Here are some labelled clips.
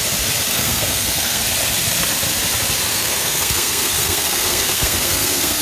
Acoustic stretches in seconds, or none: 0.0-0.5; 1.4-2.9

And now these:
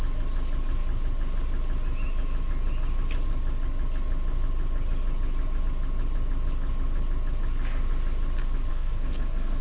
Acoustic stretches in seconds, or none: 0.0-8.7